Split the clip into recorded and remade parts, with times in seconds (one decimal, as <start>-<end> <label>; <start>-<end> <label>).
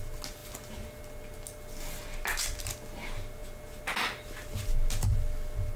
0.0-5.8 recorded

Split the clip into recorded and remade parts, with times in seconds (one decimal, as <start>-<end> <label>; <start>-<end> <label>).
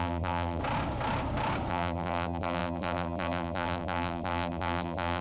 0.0-0.6 remade; 0.6-1.7 recorded; 1.7-5.2 remade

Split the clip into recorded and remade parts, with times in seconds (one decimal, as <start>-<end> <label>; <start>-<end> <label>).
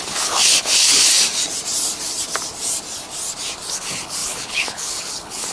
0.0-1.1 remade; 1.1-3.7 recorded; 3.7-5.5 remade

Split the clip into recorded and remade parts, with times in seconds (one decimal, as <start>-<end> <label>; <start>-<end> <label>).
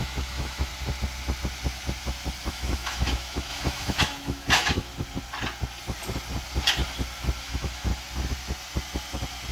0.0-0.7 remade; 0.7-2.5 recorded; 2.5-4.9 remade; 4.9-7.4 recorded; 7.4-7.9 remade; 7.9-9.5 recorded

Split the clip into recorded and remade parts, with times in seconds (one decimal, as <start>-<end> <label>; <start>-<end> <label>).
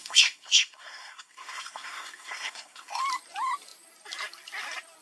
0.0-3.0 remade; 3.0-5.0 recorded